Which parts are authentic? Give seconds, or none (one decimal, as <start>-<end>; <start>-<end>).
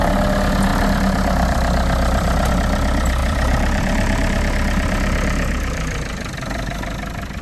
0.0-0.7; 2.5-3.2